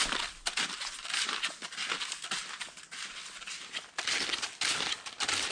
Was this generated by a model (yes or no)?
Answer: no